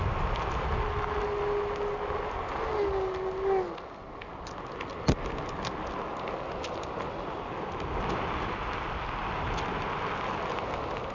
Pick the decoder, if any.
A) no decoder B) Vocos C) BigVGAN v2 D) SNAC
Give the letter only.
A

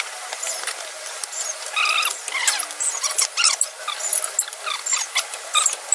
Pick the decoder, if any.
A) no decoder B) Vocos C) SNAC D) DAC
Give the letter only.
A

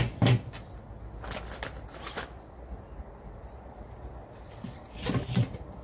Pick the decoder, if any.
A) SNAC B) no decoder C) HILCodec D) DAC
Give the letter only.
B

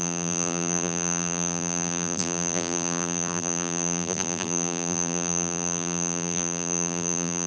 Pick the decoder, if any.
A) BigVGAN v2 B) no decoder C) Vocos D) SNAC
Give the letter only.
A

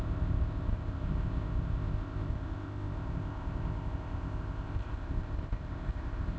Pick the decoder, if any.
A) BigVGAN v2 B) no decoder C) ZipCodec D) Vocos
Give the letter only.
C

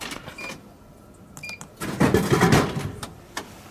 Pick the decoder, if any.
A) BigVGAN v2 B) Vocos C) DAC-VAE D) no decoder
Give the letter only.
D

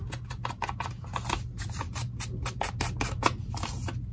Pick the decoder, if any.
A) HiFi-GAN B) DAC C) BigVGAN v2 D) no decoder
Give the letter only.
D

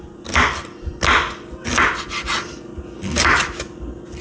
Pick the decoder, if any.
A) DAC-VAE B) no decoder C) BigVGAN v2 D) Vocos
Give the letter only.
B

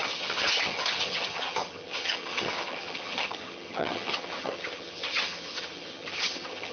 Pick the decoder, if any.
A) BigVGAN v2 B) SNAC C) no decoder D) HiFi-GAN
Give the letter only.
D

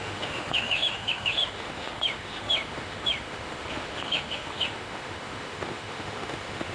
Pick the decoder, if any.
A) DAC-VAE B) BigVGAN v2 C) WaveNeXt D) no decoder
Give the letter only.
A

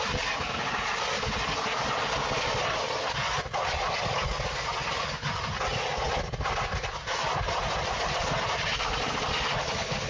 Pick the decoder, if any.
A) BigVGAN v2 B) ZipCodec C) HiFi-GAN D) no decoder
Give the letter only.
D